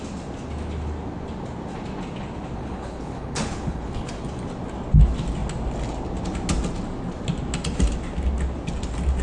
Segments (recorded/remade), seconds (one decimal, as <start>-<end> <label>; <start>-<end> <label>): 0.0-2.6 recorded; 2.6-4.1 remade; 4.1-9.2 recorded